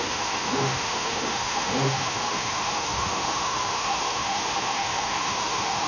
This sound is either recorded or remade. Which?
remade